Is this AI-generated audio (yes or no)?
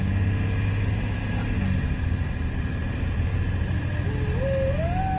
no